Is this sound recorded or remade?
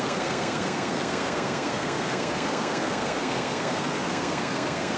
remade